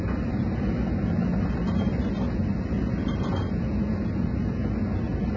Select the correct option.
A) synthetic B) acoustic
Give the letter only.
B